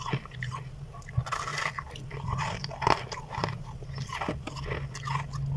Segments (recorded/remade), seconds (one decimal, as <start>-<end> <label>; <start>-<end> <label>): 0.0-5.6 recorded